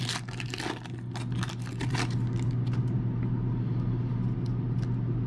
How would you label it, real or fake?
real